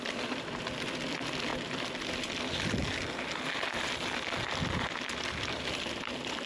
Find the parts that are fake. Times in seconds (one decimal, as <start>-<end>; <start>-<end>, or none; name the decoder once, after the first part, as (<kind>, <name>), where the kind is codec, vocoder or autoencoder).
none